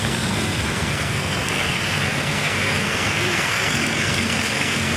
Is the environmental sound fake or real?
fake